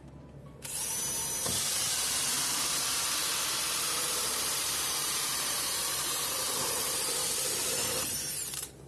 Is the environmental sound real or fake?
fake